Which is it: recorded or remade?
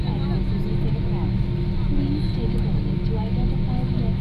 recorded